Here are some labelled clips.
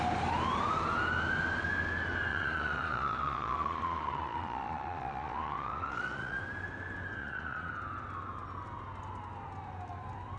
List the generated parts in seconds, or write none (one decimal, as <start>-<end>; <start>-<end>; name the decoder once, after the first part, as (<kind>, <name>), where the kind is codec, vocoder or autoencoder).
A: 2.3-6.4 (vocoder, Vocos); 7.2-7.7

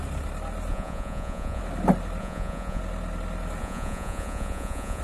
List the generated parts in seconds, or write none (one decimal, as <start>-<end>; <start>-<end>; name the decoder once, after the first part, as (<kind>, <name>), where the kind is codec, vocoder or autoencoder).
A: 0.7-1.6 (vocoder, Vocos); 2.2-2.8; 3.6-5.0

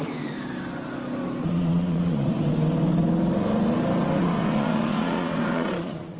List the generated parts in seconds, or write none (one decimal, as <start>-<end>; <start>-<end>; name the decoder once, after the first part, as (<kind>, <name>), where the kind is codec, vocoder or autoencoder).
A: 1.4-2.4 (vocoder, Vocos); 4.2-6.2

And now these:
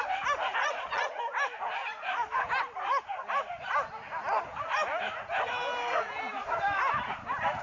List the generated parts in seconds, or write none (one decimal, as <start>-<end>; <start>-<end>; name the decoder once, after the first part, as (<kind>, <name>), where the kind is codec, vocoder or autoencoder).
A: 0.6-1.2 (vocoder, Vocos)

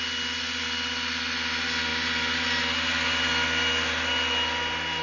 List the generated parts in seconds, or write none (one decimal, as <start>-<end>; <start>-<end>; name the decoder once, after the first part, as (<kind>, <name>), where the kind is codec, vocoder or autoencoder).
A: none

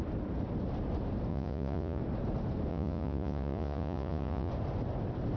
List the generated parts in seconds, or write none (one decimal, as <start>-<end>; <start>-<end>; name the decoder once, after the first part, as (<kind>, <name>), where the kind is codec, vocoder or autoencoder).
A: 1.3-2.0 (vocoder, Vocos); 2.7-4.5

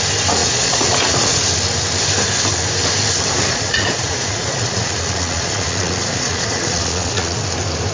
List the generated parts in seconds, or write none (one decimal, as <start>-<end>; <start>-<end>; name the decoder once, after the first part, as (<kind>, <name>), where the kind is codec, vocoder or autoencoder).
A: 0.4-1.4 (vocoder, Vocos); 3.5-7.4